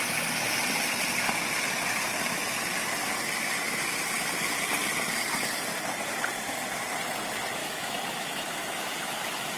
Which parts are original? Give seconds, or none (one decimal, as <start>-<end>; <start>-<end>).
0.0-7.6